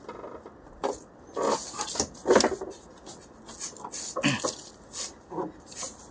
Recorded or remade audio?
recorded